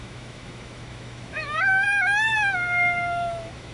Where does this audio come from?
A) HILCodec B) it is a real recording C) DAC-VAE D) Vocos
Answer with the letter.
C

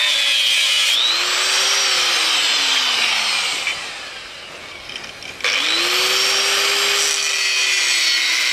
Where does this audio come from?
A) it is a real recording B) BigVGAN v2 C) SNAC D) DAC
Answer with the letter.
A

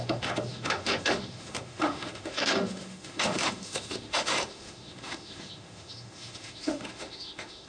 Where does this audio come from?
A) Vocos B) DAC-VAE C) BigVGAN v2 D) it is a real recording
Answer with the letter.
B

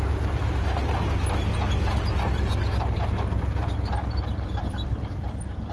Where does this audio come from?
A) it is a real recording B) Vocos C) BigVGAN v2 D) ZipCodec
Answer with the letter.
A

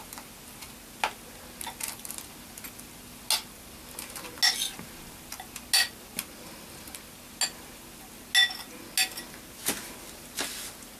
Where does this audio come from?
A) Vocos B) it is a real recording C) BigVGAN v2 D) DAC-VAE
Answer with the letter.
B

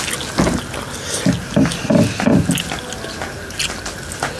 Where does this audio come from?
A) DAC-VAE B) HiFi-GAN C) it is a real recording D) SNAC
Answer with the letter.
C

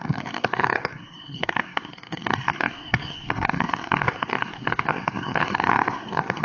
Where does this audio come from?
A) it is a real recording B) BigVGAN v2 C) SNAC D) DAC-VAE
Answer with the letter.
C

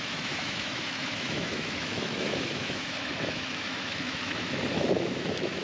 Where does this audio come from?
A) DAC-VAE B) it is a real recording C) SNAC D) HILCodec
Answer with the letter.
A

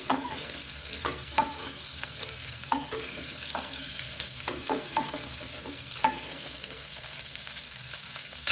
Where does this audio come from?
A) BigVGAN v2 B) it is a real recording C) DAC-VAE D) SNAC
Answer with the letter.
D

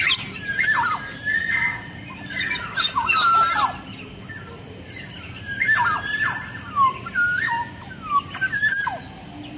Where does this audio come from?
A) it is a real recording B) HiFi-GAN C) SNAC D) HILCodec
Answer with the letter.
A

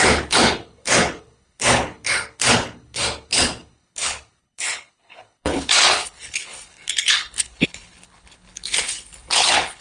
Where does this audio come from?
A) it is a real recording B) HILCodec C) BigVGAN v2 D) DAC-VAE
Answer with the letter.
B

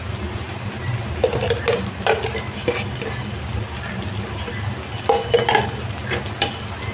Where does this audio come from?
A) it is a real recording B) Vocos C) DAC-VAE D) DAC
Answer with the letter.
A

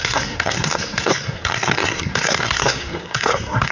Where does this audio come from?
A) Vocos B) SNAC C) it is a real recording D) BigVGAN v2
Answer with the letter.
B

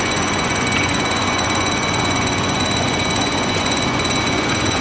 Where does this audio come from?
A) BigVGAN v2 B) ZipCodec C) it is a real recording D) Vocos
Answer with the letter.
D